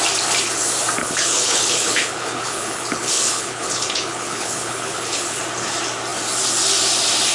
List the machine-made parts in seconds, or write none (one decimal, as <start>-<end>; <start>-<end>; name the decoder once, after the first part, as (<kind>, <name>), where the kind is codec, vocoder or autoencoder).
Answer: 1.0-5.4 (codec, HILCodec)